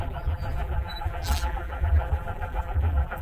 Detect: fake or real fake